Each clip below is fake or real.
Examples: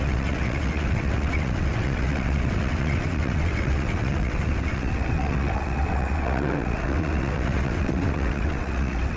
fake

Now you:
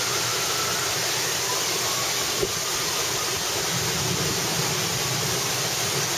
real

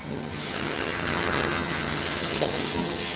fake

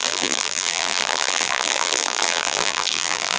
fake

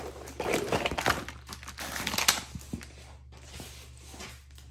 real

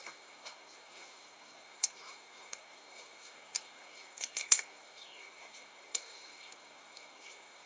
fake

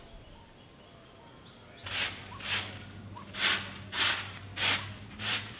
real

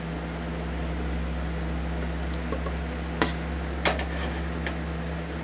real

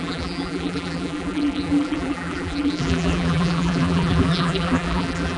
fake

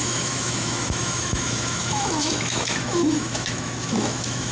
fake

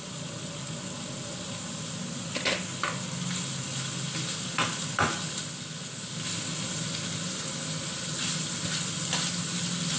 real